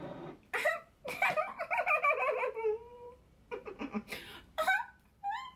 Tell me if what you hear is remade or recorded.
remade